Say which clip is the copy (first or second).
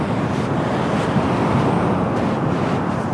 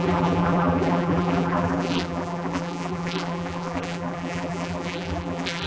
second